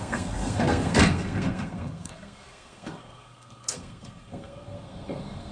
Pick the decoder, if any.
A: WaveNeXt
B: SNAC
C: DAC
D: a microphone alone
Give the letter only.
B